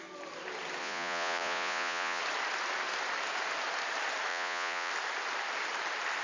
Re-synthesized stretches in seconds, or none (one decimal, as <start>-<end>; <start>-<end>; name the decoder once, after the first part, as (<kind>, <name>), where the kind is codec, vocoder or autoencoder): 0.8-2.2 (vocoder, Vocos); 4.3-4.9